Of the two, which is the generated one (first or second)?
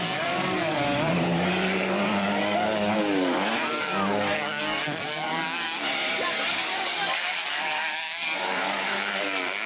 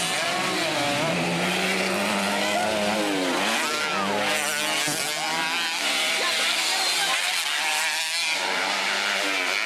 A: first